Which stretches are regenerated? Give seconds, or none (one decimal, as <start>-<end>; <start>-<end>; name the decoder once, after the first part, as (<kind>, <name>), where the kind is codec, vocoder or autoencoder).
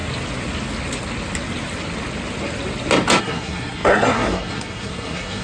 3.2-5.4 (codec, SNAC)